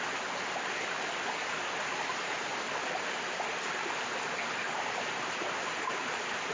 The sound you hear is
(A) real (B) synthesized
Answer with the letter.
A